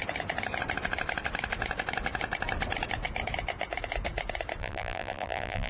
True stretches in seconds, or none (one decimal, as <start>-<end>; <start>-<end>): 0.0-4.6